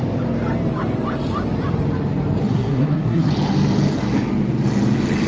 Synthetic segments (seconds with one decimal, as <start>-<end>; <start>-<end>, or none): 2.4-3.3